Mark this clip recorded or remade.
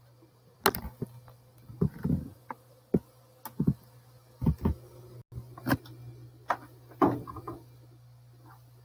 recorded